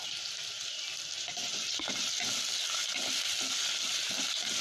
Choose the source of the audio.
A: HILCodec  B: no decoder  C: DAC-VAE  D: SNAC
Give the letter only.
B